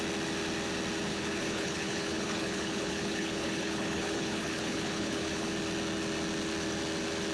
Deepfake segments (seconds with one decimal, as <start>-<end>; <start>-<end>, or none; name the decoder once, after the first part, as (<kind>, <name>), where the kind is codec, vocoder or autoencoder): 1.1-5.5 (codec, HILCodec)